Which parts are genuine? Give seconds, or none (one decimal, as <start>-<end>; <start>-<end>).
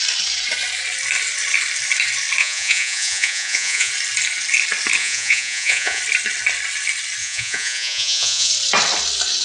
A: 0.0-2.4; 3.9-5.0; 6.0-7.2; 8.5-9.4